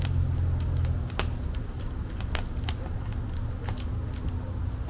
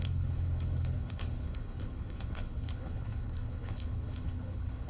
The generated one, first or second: second